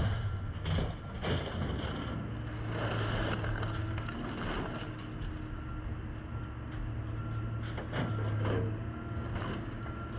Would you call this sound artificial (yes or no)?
no